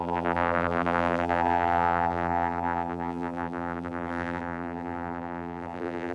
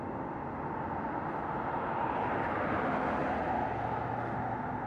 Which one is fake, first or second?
first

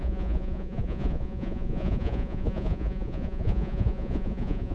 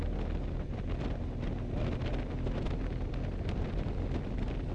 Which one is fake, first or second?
first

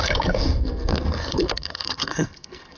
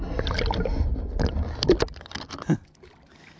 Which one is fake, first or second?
first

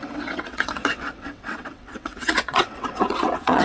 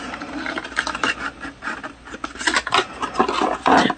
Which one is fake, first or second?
first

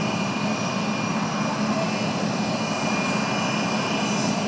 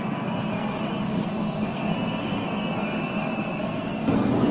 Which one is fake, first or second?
second